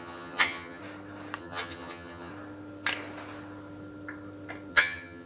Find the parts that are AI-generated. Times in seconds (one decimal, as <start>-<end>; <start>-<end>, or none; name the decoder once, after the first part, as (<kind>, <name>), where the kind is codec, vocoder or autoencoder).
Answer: 0.0-0.8 (vocoder, HiFi-GAN); 1.4-2.3; 4.7-5.3